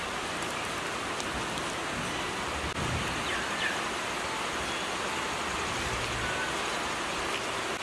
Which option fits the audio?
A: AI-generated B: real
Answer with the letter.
B